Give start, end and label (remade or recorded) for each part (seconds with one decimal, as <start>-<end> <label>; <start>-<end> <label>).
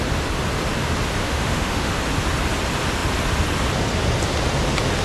0.0-1.2 recorded; 1.2-1.9 remade; 1.9-5.0 recorded